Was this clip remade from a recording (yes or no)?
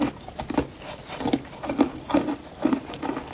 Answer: no